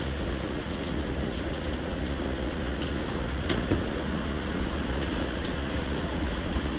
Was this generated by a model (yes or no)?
yes